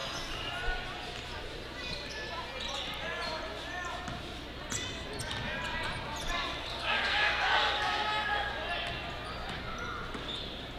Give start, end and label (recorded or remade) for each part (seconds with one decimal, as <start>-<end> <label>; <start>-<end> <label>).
0.0-6.6 recorded; 6.6-8.5 remade; 8.5-10.8 recorded